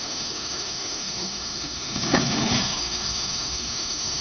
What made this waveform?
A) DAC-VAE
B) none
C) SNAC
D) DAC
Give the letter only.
A